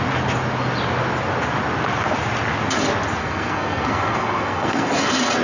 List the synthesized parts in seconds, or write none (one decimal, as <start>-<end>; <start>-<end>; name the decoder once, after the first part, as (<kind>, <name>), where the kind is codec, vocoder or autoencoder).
3.2-4.9 (codec, SNAC)